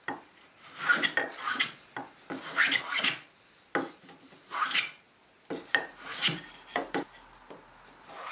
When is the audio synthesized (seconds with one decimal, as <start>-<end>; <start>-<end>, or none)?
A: 1.2-1.8

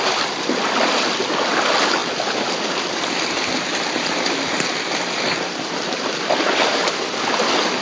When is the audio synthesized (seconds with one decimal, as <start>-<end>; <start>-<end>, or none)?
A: none

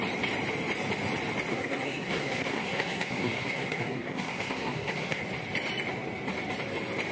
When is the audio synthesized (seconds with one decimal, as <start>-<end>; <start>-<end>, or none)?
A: 1.5-5.2

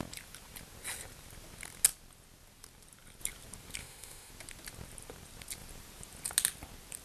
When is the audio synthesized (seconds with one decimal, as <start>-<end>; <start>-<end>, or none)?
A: 3.8-4.3

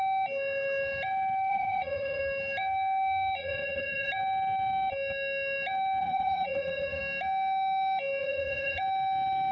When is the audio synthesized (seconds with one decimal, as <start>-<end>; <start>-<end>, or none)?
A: 1.5-2.2; 3.4-4.1; 6.0-7.0; 8.2-8.8

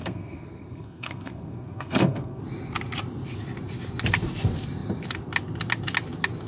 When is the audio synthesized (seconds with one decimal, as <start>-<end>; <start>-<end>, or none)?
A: 0.0-2.4

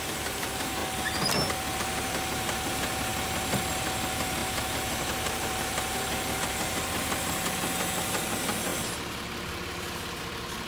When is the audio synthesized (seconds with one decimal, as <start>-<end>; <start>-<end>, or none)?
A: 0.0-0.8; 1.8-3.1; 3.7-10.7